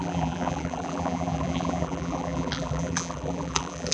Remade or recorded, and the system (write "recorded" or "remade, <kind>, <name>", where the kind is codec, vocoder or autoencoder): remade, vocoder, BigVGAN v2